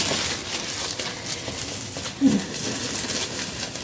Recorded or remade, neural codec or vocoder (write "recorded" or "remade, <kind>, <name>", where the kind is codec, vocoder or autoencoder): recorded